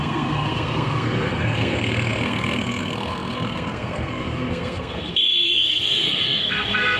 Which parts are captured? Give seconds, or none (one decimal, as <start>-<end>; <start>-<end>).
none